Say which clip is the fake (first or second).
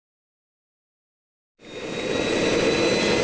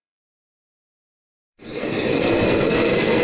second